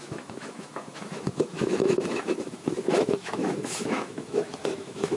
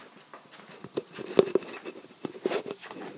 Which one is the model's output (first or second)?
first